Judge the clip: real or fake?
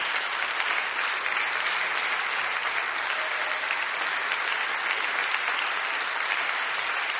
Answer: real